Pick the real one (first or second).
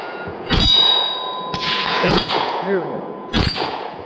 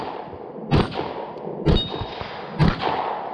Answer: second